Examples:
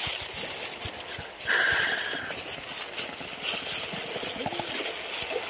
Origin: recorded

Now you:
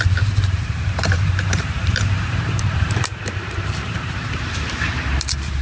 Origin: remade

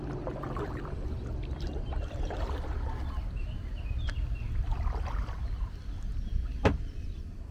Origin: remade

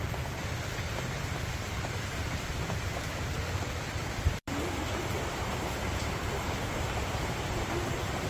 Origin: remade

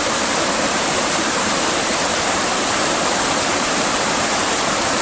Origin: remade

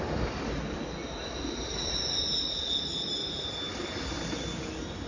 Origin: recorded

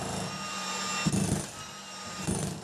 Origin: recorded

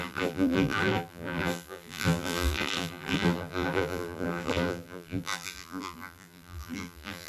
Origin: remade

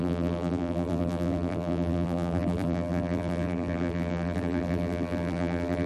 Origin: remade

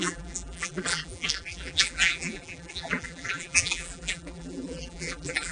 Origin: remade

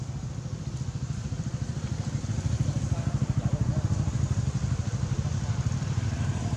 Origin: remade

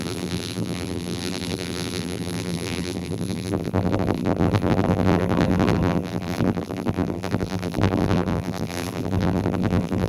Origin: remade